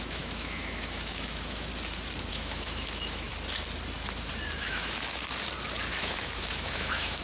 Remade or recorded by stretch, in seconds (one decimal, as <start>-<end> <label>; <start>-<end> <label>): 0.0-1.7 remade; 1.7-2.3 recorded; 2.3-3.3 remade; 3.3-4.6 recorded; 4.6-5.2 remade; 5.2-5.9 recorded; 5.9-7.2 remade